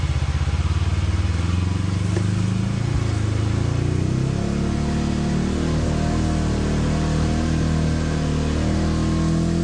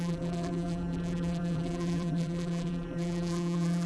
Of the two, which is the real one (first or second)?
first